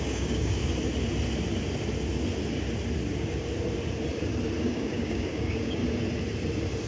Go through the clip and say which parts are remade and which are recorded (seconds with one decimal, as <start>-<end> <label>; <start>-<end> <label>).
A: 0.0-0.6 remade; 0.6-4.6 recorded; 4.6-5.8 remade; 5.8-6.9 recorded